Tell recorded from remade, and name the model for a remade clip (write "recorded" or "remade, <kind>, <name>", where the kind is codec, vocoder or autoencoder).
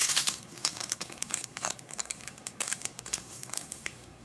remade, codec, SNAC